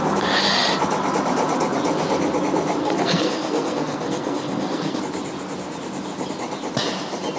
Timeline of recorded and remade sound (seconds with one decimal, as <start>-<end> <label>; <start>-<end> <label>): 0.0-2.8 recorded; 2.8-5.0 remade; 5.0-7.4 recorded